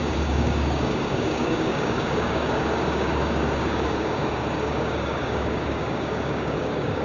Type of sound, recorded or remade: remade